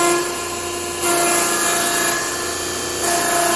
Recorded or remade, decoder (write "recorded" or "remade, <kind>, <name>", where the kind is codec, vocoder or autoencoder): recorded